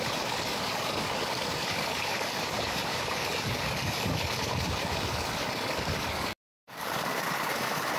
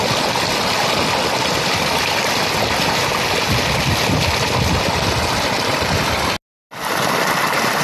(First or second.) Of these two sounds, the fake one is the first